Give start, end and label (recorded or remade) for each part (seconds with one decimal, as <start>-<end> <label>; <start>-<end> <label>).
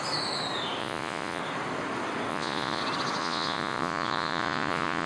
0.0-0.8 recorded; 0.8-1.4 remade; 1.4-2.3 recorded; 2.3-2.8 remade; 2.8-3.2 recorded; 3.2-5.1 remade